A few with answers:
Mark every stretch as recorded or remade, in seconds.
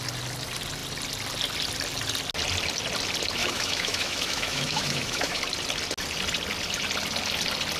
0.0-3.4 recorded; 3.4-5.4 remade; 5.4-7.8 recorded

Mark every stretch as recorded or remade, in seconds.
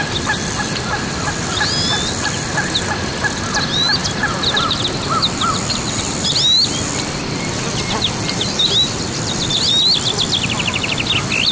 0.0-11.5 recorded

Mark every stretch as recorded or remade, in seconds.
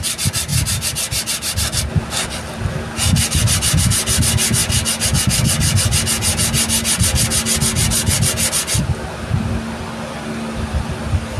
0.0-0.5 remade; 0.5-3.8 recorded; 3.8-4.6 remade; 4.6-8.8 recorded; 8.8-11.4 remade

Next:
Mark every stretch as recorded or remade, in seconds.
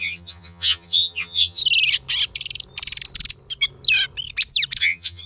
0.0-1.6 remade; 1.6-4.8 recorded; 4.8-5.3 remade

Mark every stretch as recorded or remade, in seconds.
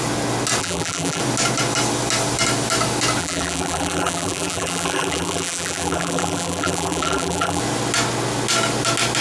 0.0-0.6 recorded; 0.6-1.2 remade; 1.2-3.2 recorded; 3.2-7.6 remade; 7.6-9.2 recorded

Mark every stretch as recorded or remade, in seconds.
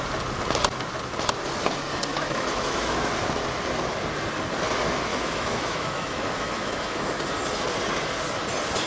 0.0-2.1 recorded; 2.1-3.1 remade; 3.1-5.1 recorded; 5.1-7.2 remade; 7.2-8.9 recorded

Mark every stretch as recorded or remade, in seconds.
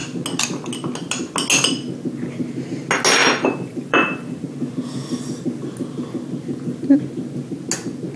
0.0-3.2 recorded; 3.2-4.4 remade; 4.4-8.2 recorded